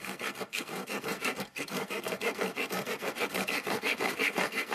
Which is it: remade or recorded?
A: remade